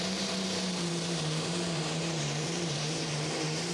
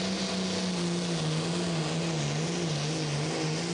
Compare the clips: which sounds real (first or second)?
second